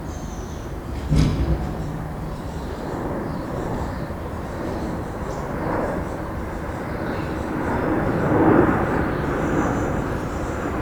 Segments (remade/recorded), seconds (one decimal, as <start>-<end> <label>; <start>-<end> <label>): 0.0-1.3 remade; 1.3-1.8 recorded; 1.8-10.8 remade